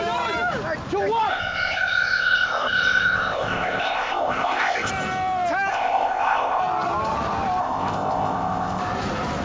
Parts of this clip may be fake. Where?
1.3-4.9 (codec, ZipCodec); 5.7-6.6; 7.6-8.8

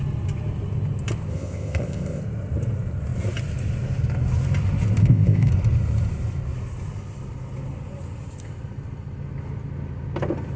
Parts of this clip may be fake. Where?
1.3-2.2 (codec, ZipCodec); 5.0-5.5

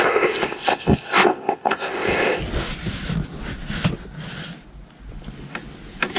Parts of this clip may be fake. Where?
0.0-2.4 (codec, ZipCodec)

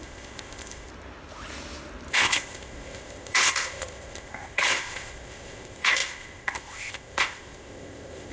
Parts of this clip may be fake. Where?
0.0-0.9 (codec, ZipCodec); 2.1-8.3

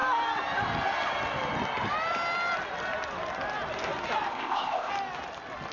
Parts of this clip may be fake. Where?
4.3-4.9 (codec, ZipCodec)

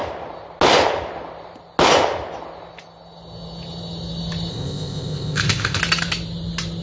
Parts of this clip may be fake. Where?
4.5-5.8 (codec, ZipCodec)

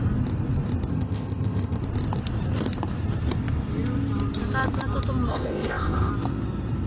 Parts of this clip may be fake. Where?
0.9-1.8 (codec, ZipCodec); 5.3-6.1

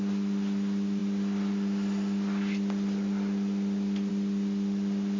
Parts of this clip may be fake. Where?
none